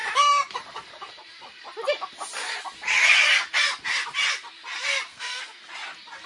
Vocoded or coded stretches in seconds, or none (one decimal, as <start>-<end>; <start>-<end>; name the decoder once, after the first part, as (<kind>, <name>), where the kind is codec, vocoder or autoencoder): 5.1-5.6 (codec, SNAC)